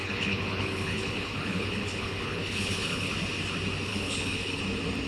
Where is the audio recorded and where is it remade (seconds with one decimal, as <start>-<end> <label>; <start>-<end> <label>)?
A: 0.0-3.1 remade; 3.1-3.9 recorded; 3.9-4.6 remade; 4.6-5.1 recorded